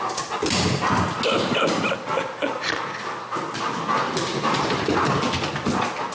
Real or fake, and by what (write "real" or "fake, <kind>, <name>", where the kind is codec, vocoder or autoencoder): real